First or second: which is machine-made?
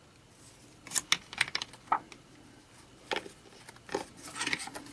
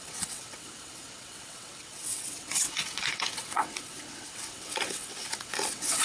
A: second